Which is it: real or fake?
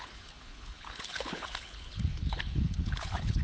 fake